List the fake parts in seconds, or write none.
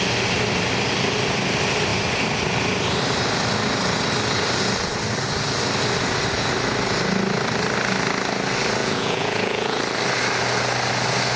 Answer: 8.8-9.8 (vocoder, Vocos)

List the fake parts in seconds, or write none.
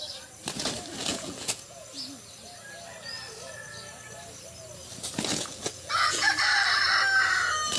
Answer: 1.1-1.8 (vocoder, Vocos); 5.3-6.3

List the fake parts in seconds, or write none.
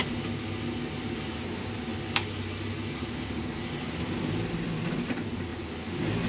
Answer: none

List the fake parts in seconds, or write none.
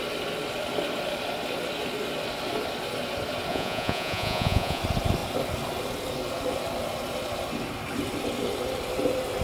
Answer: 3.5-4.8 (vocoder, Vocos)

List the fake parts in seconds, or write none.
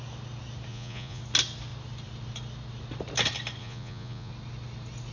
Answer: 0.7-1.2 (vocoder, Vocos); 3.6-4.3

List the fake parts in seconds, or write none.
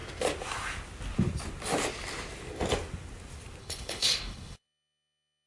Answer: 3.6-5.5 (codec, HILCodec)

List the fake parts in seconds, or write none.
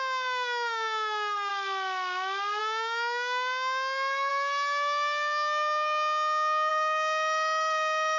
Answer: 0.0-1.5 (autoencoder, DAC-VAE); 2.6-4.3; 6.7-8.2